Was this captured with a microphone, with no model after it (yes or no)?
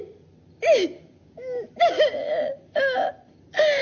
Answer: yes